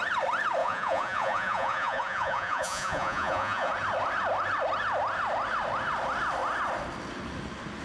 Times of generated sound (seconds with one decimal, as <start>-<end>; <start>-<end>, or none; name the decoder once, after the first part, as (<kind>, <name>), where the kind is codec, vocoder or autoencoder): 0.6-3.7 (vocoder, Vocos)